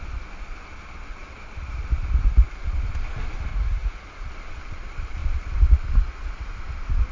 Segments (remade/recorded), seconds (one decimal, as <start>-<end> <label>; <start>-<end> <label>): 0.0-3.5 recorded; 3.5-4.3 remade; 4.3-7.1 recorded